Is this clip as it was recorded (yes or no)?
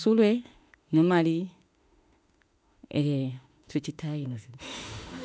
no